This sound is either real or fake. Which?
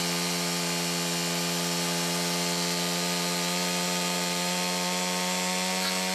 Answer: real